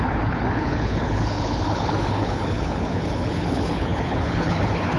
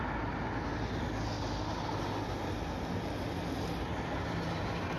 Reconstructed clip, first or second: first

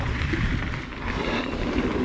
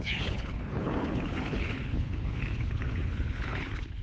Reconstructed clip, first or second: second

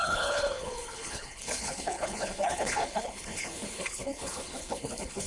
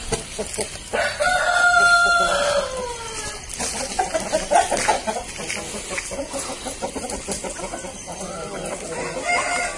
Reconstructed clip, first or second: first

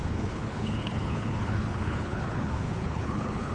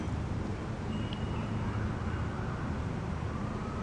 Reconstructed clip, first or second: first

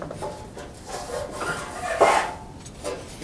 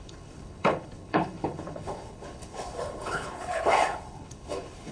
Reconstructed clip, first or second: second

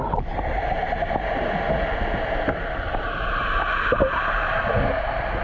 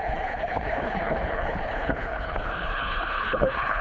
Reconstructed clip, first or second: second